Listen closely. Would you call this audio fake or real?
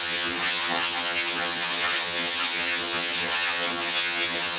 fake